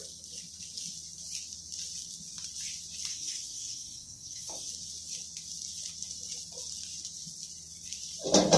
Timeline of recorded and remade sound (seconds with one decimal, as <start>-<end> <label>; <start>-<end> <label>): 0.0-3.1 recorded; 3.1-4.7 remade; 4.7-8.6 recorded